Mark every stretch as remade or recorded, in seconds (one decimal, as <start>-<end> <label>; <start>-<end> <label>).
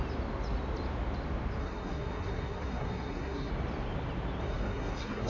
0.0-1.6 recorded; 1.6-3.5 remade; 3.5-4.4 recorded; 4.4-5.3 remade